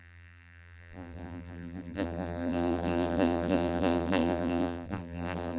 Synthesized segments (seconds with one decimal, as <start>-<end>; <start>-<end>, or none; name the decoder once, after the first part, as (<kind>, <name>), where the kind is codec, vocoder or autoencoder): 0.0-5.6 (vocoder, BigVGAN v2)